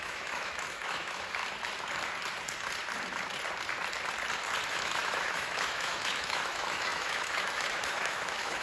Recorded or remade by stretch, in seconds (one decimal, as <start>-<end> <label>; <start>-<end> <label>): 0.0-1.4 remade; 1.4-4.6 recorded; 4.6-8.6 remade